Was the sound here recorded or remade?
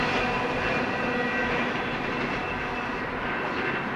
recorded